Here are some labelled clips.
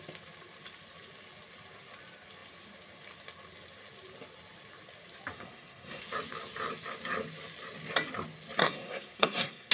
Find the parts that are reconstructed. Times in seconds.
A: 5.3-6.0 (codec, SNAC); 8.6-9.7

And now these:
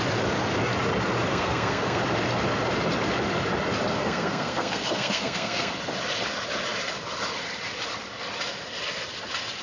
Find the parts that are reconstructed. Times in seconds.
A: 1.3-2.0 (codec, SNAC); 3.9-5.7

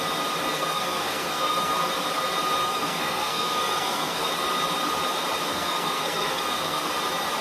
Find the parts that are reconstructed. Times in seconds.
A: 0.5-1.8 (codec, SNAC); 2.6-4.3; 5.5-6.9

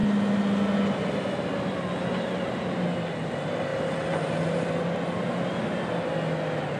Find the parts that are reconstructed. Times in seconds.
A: none

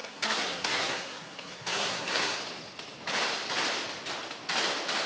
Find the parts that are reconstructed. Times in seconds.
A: 0.0-2.4 (codec, SNAC)

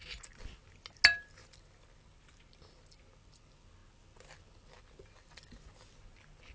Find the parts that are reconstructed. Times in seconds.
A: none

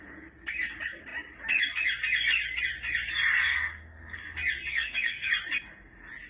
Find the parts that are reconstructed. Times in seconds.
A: 3.4-4.2 (codec, SNAC); 4.7-5.3

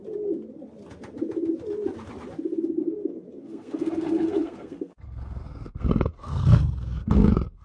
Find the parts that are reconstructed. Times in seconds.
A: 3.4-7.6 (codec, SNAC)